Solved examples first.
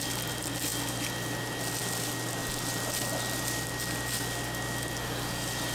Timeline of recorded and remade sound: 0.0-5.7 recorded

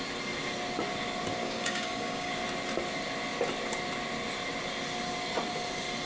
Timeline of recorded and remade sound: 0.0-1.4 recorded; 1.4-2.3 remade; 2.3-6.1 recorded

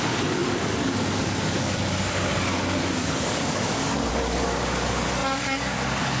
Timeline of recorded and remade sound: 0.0-6.2 remade